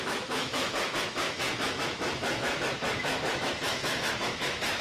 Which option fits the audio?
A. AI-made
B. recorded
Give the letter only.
A